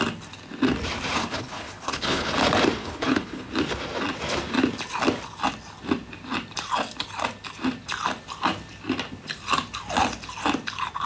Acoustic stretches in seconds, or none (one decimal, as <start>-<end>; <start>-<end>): 0.0-1.2; 2.3-2.8; 3.5-11.1